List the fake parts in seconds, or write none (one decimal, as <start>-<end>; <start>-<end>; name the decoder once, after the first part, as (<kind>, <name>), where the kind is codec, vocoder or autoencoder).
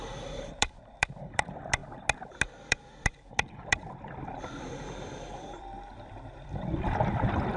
0.0-1.8 (vocoder, BigVGAN v2); 2.6-7.6